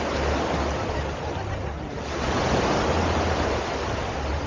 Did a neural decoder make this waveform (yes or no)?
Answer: no